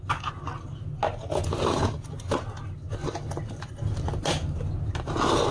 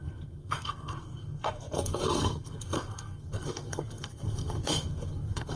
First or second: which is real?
first